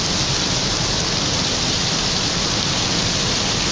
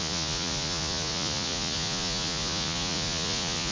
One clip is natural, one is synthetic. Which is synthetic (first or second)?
second